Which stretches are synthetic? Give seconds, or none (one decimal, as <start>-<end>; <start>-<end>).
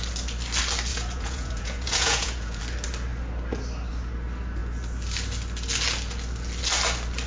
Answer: 0.9-2.6